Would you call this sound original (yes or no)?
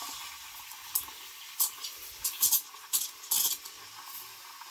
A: yes